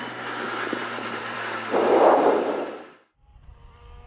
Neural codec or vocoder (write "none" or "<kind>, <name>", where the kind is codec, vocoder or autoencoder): vocoder, BigVGAN v2